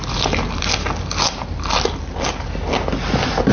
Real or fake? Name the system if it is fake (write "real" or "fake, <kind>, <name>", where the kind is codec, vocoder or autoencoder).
real